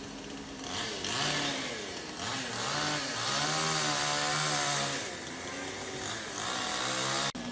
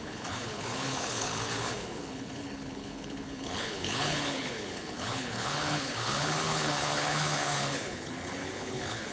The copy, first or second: second